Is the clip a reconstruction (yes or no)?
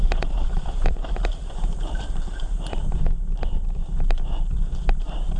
yes